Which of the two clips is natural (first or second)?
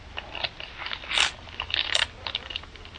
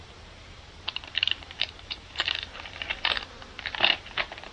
first